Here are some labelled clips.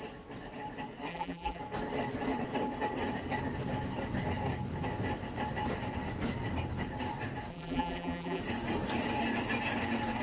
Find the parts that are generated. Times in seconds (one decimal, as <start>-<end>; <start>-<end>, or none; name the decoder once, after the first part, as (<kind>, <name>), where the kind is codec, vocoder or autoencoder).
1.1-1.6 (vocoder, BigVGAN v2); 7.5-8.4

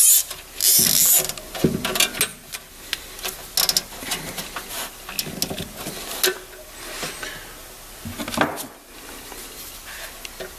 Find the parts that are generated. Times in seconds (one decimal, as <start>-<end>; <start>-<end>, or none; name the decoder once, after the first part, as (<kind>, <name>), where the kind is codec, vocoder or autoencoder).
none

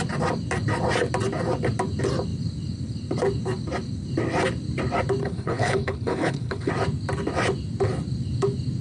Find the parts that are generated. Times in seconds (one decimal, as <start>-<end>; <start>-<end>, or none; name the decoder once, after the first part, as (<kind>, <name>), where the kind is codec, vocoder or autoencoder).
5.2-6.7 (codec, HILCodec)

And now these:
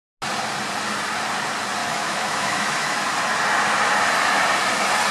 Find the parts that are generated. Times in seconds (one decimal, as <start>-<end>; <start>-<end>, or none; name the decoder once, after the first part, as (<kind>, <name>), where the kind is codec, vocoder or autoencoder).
1.8-3.0 (autoencoder, DAC-VAE)